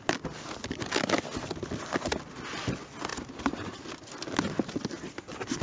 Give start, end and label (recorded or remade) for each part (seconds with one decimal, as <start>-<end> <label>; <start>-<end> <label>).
0.0-3.1 recorded; 3.1-3.9 remade; 3.9-5.6 recorded